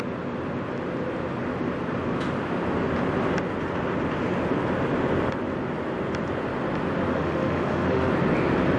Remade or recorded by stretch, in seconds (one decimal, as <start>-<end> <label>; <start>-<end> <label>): 0.0-7.1 recorded; 7.1-8.1 remade; 8.1-8.8 recorded